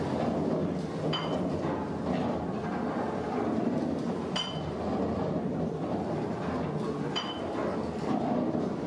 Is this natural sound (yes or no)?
yes